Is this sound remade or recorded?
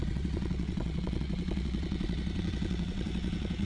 remade